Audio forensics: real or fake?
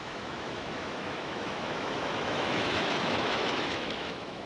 fake